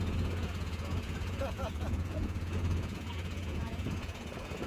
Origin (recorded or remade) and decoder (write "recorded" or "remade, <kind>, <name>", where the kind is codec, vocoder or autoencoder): remade, vocoder, Vocos